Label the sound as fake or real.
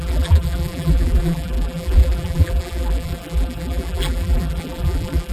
fake